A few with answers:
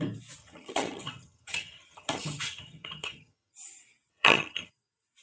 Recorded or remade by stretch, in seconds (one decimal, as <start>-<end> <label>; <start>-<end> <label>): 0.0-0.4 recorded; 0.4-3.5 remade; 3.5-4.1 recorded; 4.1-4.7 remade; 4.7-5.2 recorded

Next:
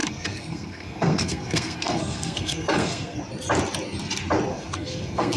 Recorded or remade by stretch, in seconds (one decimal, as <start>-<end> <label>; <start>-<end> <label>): 0.0-3.2 remade; 3.2-4.5 recorded; 4.5-5.4 remade

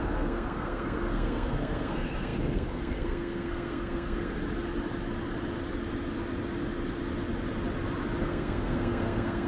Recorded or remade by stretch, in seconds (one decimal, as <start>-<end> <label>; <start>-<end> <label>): 0.0-4.4 remade; 4.4-8.2 recorded; 8.2-9.5 remade

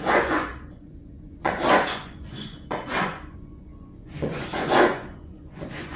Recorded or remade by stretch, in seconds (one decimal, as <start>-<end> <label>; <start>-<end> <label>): 0.0-6.0 remade

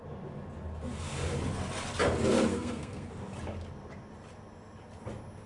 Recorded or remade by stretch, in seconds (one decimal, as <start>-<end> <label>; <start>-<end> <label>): 0.0-2.5 recorded; 2.5-3.1 remade; 3.1-5.5 recorded